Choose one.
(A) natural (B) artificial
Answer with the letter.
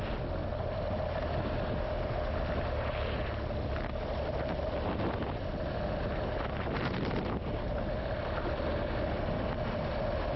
A